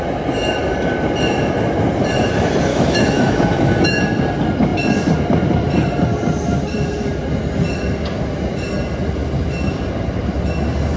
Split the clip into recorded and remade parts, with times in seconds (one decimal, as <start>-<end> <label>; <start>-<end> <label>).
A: 0.0-2.7 recorded; 2.7-4.0 remade; 4.0-11.0 recorded

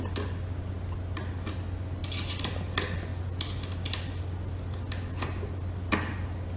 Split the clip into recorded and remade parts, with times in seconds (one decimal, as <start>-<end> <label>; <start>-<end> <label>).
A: 0.0-6.6 recorded